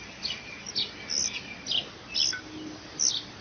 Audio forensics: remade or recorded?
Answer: recorded